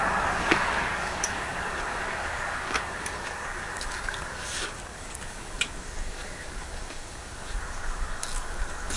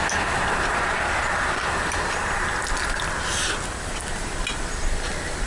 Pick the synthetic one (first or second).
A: first